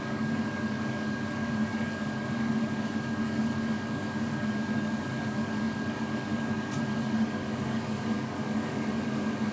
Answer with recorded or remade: remade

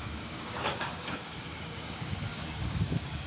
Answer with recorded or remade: remade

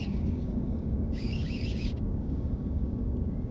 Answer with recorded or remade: remade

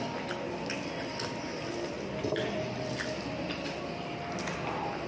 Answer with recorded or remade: recorded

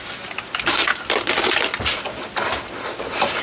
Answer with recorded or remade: recorded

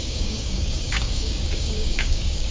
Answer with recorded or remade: remade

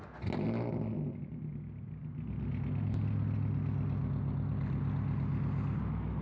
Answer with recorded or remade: recorded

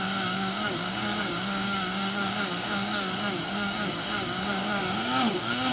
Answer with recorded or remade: remade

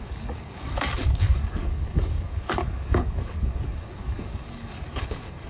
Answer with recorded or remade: remade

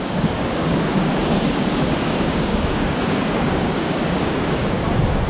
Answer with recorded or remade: remade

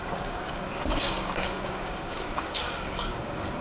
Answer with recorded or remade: remade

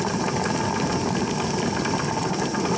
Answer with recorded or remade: recorded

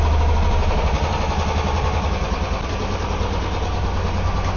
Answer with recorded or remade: recorded